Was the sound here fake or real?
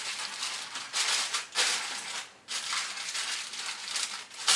real